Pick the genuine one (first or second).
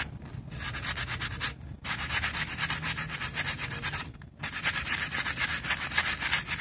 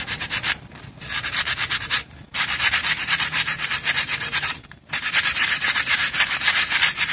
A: first